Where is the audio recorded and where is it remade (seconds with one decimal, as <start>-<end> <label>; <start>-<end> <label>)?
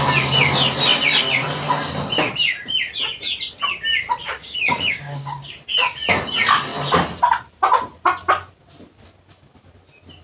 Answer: 0.0-4.2 recorded; 4.2-5.4 remade; 5.4-10.2 recorded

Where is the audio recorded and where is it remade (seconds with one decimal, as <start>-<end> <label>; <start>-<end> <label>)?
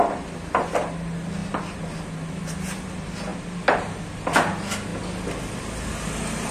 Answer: 0.0-6.5 recorded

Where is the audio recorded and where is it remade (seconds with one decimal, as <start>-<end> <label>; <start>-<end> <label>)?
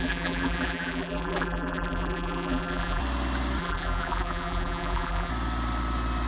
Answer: 0.0-3.0 remade; 3.0-3.6 recorded; 3.6-5.3 remade; 5.3-6.3 recorded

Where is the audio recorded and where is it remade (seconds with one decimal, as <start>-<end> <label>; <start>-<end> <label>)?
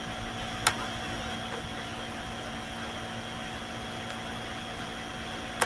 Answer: 0.0-5.7 recorded